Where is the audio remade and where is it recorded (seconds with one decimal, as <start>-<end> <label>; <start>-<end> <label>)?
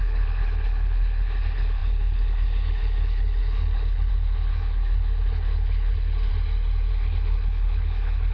0.0-6.3 remade; 6.3-6.9 recorded; 6.9-8.3 remade